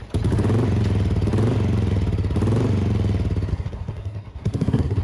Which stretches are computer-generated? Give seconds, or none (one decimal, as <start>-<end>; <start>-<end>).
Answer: 3.5-5.0